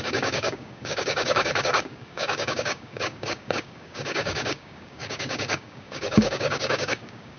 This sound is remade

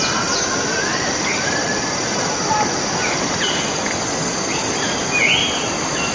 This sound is recorded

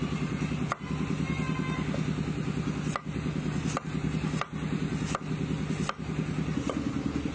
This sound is recorded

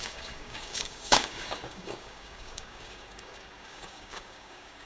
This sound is remade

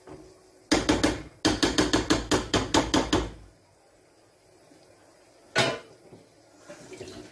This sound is recorded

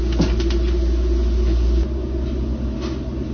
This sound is recorded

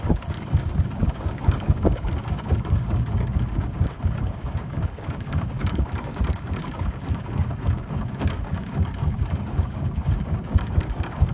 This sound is remade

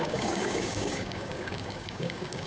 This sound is remade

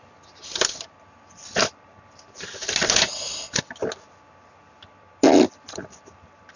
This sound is recorded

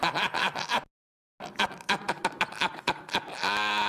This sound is recorded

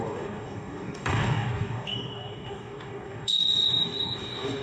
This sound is remade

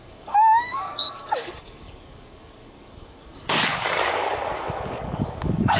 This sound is remade